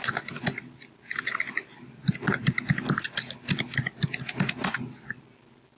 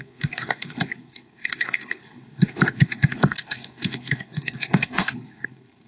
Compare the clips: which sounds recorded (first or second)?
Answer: first